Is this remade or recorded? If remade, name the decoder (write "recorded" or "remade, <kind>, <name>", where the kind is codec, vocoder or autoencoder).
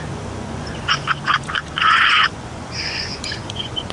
remade, vocoder, Vocos